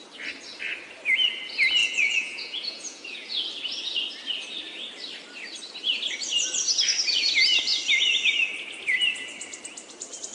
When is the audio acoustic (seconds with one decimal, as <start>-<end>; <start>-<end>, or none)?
0.0-1.8; 3.4-10.3